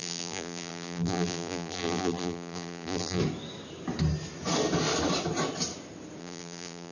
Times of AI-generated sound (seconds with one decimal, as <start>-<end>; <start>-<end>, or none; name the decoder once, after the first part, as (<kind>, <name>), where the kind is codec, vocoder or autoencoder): 0.0-3.2 (vocoder, BigVGAN v2); 6.2-6.9